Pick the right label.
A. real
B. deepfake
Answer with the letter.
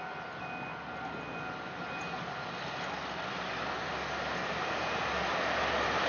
A